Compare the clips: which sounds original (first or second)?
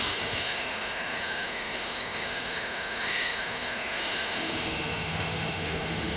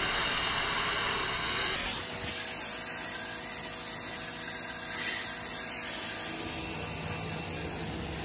second